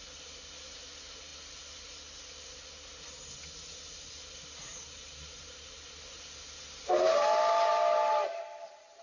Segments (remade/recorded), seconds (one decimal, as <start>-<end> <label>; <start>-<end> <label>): 0.0-9.0 recorded